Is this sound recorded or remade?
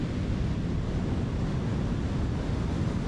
recorded